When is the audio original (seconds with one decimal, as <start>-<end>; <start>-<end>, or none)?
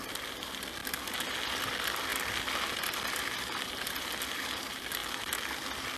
0.8-1.5; 2.1-2.7; 5.0-6.0